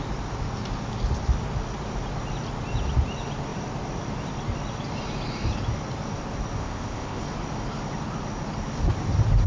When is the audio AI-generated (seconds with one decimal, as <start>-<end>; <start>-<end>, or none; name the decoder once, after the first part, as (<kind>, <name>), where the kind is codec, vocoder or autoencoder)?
6.6-7.2 (codec, ZipCodec)